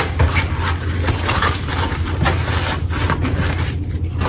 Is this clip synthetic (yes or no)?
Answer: no